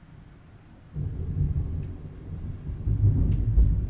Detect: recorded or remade recorded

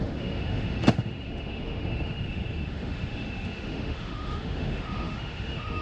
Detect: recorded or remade remade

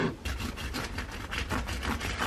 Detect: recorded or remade recorded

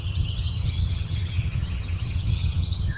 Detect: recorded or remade remade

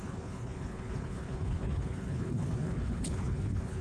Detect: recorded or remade remade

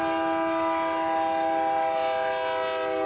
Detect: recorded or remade recorded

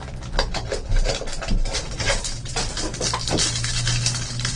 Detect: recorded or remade recorded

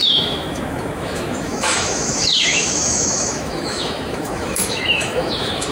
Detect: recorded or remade remade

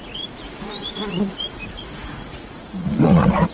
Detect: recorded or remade remade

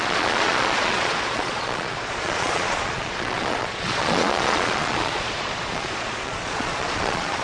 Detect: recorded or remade remade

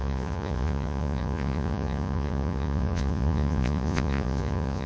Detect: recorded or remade remade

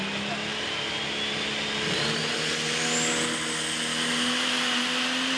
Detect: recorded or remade recorded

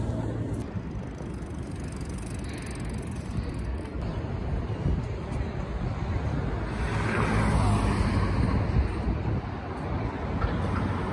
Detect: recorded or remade recorded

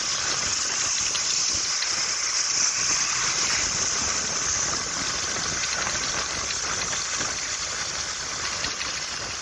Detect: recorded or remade recorded